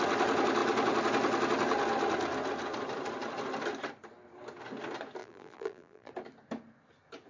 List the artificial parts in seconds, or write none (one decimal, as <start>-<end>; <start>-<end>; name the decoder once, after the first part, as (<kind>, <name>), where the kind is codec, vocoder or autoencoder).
5.2-6.1 (vocoder, BigVGAN v2)